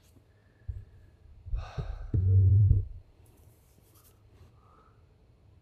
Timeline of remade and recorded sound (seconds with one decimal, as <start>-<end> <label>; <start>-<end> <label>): 0.0-2.5 recorded; 2.5-4.5 remade; 4.5-5.6 recorded